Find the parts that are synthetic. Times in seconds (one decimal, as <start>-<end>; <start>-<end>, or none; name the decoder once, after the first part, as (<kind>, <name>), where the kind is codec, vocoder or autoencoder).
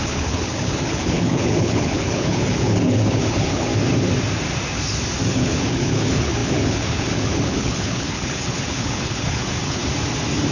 0.0-3.7 (codec, HILCodec); 5.3-9.8